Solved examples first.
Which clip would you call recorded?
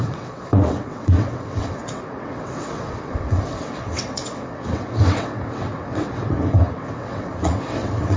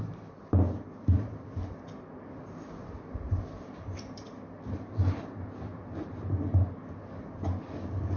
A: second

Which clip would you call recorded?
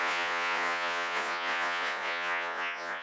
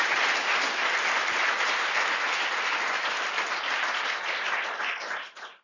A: second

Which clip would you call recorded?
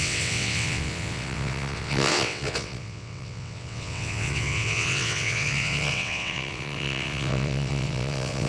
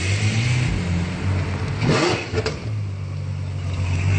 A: second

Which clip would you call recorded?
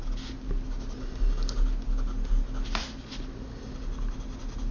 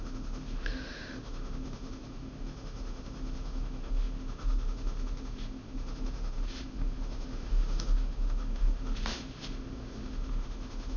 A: first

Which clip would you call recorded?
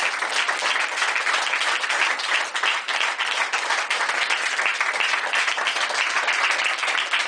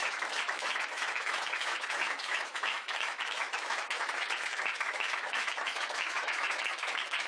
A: first